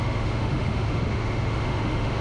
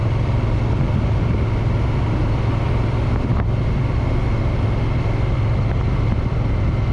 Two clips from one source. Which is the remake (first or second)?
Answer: first